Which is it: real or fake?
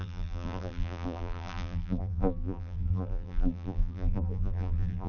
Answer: fake